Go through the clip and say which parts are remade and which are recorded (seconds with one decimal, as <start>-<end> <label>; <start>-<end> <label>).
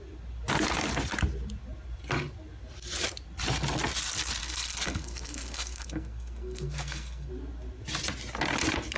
0.0-4.4 recorded; 4.4-7.3 remade; 7.3-9.0 recorded